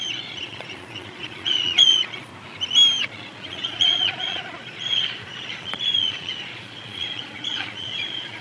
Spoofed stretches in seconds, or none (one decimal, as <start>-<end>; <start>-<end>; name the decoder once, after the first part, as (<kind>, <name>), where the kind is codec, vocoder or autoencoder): 0.0-2.3 (vocoder, Vocos); 3.0-8.4